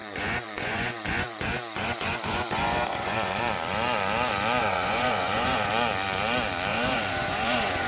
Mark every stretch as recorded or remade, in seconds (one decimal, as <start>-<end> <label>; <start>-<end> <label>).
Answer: 0.0-3.4 remade; 3.4-4.6 recorded; 4.6-5.7 remade; 5.7-6.7 recorded; 6.7-7.9 remade